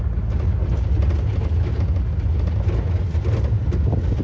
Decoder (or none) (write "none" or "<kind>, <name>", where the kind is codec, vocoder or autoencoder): none